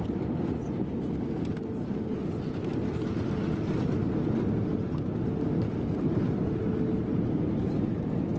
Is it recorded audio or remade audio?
recorded